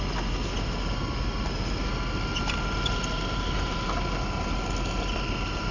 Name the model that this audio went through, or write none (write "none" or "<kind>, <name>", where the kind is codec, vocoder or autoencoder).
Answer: none